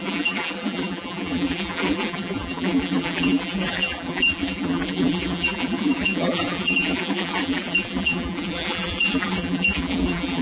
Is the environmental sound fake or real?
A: fake